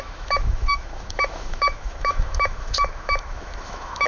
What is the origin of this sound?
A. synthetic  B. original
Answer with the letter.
A